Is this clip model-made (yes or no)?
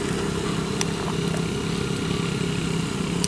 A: no